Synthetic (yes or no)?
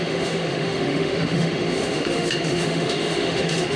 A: yes